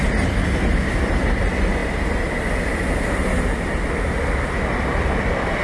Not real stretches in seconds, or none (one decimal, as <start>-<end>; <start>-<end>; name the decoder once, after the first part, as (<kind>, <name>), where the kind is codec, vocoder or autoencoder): none

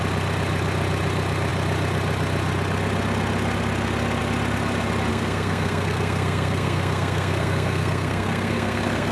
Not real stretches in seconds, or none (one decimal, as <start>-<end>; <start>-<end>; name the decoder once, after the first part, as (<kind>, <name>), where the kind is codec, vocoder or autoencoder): 5.1-9.1 (codec, SNAC)

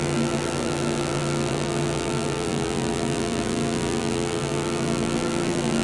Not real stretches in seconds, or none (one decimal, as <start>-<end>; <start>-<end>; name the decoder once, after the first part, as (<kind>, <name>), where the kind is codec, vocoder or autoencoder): 0.0-5.8 (vocoder, BigVGAN v2)

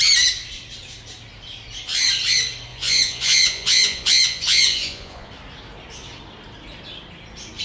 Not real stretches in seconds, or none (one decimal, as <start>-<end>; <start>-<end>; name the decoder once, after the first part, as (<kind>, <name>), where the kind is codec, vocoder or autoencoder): 2.7-5.3 (vocoder, Vocos)

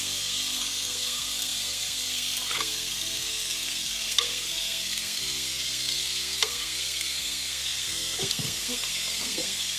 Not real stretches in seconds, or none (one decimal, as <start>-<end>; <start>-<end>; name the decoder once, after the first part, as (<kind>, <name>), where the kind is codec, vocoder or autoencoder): 0.0-9.8 (codec, SNAC)

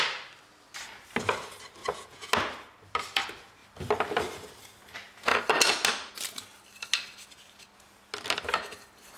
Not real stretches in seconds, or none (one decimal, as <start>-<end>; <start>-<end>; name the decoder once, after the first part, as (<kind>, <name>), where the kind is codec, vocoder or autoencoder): 1.8-2.3 (vocoder, Vocos)

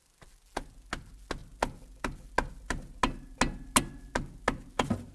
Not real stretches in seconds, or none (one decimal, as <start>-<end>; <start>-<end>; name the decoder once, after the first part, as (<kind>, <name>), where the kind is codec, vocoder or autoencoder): none